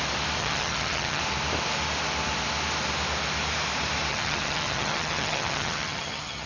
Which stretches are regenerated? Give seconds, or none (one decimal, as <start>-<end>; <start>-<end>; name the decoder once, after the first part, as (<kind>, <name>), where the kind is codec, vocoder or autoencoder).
0.4-1.2 (vocoder, HiFi-GAN); 4.1-6.5